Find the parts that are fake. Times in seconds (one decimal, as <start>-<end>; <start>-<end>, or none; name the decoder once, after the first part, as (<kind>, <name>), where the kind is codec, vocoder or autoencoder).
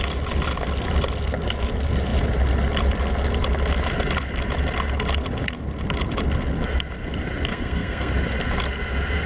7.5-8.1 (codec, SNAC)